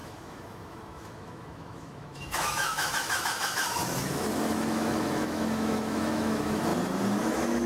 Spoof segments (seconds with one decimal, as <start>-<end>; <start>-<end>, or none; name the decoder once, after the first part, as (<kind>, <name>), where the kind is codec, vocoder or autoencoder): 0.0-6.7 (autoencoder, DAC-VAE); 7.2-7.7